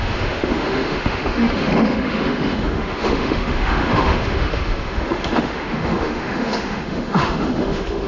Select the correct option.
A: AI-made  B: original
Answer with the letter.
A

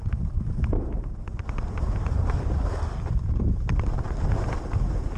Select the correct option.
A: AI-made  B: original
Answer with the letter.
B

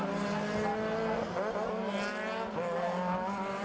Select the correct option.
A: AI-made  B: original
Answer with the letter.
B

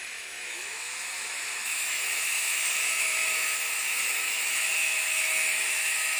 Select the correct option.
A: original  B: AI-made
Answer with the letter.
B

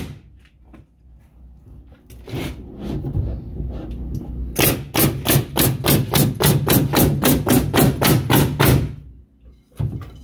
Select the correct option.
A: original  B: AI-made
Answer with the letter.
A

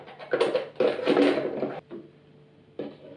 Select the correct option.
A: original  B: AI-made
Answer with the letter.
A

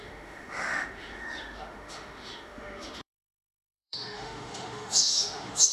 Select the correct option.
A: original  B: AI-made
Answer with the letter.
B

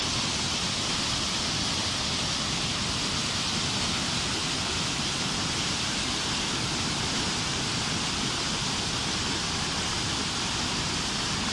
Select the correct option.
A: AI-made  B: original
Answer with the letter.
B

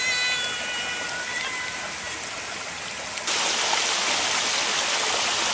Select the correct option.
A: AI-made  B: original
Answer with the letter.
B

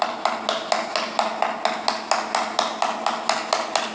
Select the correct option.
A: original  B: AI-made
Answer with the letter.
A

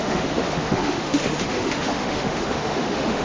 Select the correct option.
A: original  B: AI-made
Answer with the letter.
B